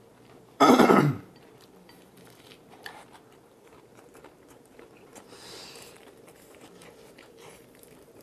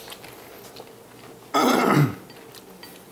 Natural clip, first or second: second